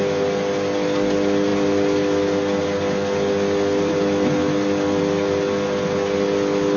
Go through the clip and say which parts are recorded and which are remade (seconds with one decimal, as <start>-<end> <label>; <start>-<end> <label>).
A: 0.0-6.8 recorded